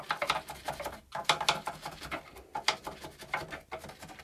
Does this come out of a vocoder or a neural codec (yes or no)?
no